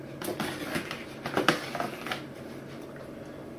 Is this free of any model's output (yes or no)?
yes